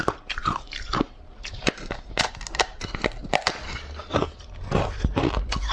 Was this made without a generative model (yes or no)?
no